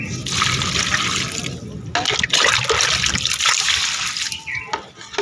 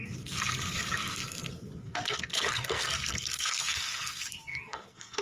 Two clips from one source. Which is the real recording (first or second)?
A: first